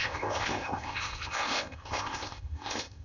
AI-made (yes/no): yes